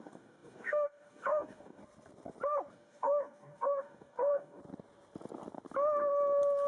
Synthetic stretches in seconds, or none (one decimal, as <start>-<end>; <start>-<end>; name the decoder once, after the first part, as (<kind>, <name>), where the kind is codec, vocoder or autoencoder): 0.0-1.8 (codec, DAC); 2.7-4.6